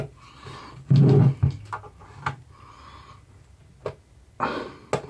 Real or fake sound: real